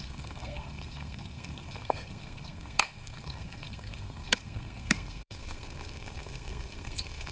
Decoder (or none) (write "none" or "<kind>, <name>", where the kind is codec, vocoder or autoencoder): codec, SNAC